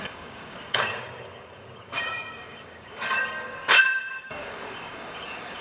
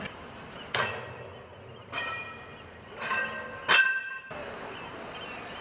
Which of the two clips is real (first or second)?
second